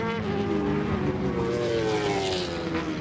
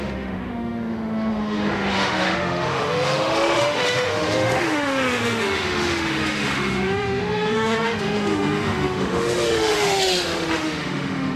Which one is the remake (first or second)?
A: second